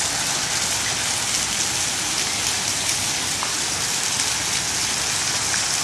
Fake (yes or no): no